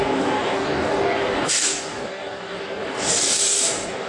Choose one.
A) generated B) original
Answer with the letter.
A